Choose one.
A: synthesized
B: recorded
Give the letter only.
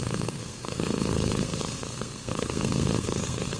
A